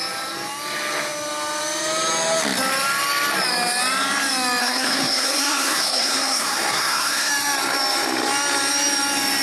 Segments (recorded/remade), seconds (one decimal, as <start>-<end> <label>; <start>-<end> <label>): 0.0-4.6 recorded; 4.6-7.3 remade; 7.3-9.4 recorded